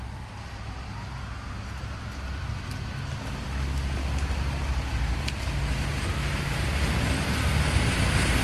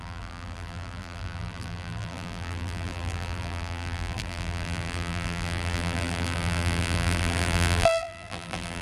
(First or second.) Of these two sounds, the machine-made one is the second